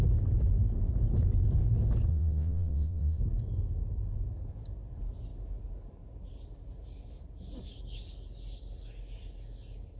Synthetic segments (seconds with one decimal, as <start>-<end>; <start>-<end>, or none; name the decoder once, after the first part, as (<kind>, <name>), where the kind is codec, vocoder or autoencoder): 2.1-3.2 (vocoder, WaveNeXt)